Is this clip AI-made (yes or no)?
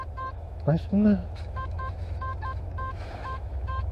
yes